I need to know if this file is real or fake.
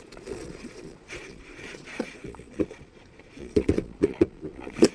fake